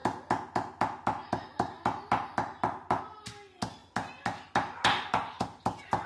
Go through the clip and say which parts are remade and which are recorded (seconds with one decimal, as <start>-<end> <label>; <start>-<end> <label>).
0.0-6.1 recorded

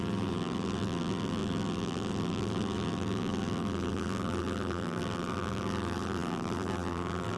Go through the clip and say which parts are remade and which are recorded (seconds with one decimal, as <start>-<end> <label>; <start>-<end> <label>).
0.0-7.4 remade

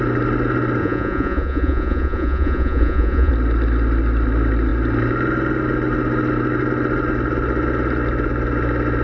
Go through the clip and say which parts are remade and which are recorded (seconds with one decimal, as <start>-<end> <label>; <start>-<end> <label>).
0.0-0.8 recorded; 0.8-3.3 remade; 3.3-9.0 recorded

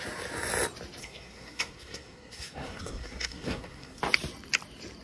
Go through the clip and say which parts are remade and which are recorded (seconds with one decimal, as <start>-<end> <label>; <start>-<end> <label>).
0.0-1.0 recorded; 1.0-4.0 remade; 4.0-5.0 recorded

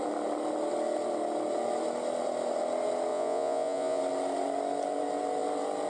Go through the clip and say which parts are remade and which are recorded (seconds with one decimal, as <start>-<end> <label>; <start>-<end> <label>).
0.0-3.1 recorded; 3.1-4.0 remade; 4.0-5.9 recorded

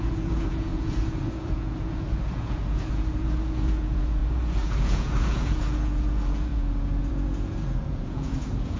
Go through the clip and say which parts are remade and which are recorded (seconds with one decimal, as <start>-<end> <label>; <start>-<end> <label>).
0.0-8.8 remade